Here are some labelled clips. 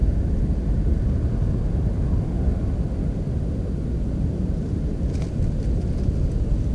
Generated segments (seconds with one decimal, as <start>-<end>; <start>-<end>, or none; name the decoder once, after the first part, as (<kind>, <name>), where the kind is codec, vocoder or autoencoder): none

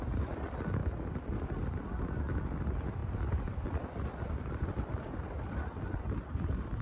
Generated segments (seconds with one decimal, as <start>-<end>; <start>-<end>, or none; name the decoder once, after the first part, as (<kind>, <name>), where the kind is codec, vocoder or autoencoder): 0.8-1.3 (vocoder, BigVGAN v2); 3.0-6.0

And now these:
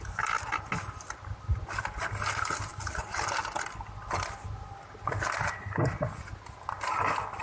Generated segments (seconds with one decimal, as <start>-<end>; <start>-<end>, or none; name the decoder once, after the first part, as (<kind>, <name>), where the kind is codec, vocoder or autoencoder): none

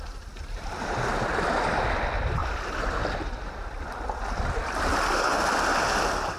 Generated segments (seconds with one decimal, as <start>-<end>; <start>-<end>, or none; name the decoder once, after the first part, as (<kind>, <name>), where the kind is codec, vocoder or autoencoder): 2.4-4.8 (vocoder, BigVGAN v2)

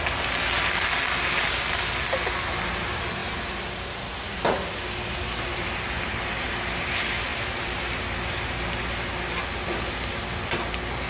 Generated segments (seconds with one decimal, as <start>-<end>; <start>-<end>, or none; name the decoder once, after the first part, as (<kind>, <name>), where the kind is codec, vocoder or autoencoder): 7.3-7.9 (vocoder, BigVGAN v2)

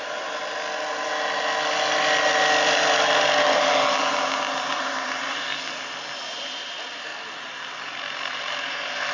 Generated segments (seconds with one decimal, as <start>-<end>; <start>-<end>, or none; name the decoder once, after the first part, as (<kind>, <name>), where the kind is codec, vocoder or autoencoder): 0.0-0.4 (vocoder, BigVGAN v2); 4.7-5.5; 6.3-7.1; 8.3-9.1